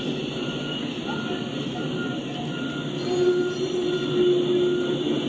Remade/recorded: recorded